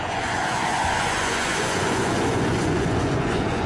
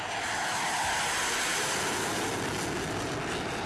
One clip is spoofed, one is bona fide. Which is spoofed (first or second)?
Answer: first